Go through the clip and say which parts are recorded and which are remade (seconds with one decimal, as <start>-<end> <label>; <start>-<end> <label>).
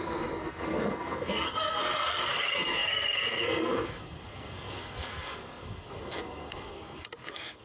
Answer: 0.0-7.6 remade